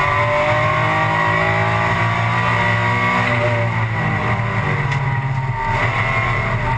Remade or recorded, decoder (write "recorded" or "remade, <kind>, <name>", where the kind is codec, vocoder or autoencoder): recorded